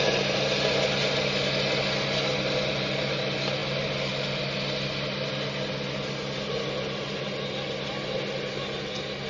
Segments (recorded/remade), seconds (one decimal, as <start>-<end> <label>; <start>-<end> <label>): 0.0-9.3 recorded